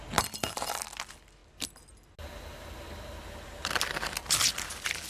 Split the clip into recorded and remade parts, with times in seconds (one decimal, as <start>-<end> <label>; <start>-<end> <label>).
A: 0.0-5.1 recorded